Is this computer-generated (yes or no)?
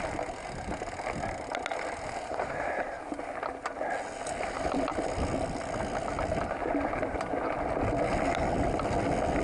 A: no